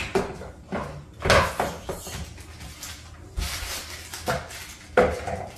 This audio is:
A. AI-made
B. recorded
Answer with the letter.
B